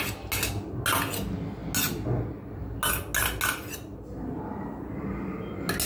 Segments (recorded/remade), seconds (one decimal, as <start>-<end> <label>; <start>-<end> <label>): 0.0-5.9 recorded